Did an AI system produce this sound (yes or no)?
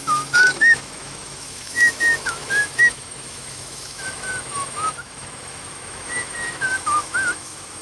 yes